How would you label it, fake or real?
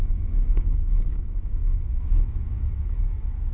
fake